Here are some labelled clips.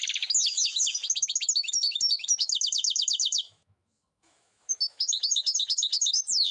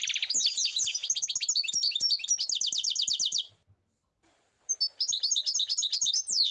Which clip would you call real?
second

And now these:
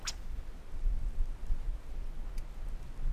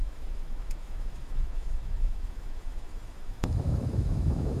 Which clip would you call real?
first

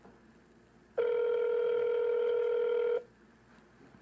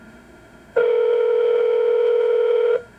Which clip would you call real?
first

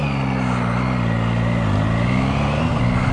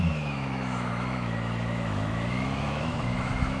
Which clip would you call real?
first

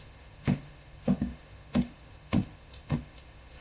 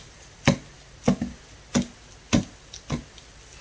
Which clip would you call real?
second